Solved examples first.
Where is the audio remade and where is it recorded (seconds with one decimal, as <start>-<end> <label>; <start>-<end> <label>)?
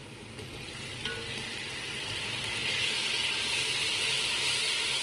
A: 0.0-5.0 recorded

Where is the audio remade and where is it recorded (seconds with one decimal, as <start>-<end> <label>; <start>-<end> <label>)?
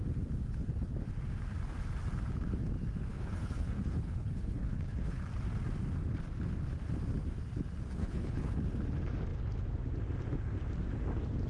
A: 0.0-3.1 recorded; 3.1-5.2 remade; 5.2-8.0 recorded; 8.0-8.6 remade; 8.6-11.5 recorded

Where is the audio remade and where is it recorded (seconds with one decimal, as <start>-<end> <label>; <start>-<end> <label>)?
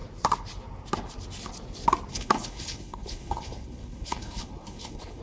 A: 0.0-2.1 recorded; 2.1-5.2 remade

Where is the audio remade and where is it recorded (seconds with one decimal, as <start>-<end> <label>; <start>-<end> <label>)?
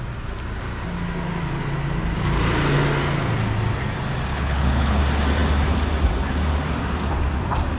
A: 0.0-4.3 recorded; 4.3-5.0 remade; 5.0-7.8 recorded